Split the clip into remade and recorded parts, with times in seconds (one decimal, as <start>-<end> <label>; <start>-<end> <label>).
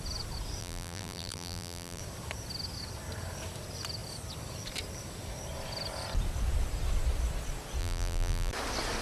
0.0-0.6 recorded; 0.6-2.0 remade; 2.0-7.8 recorded; 7.8-8.5 remade; 8.5-9.0 recorded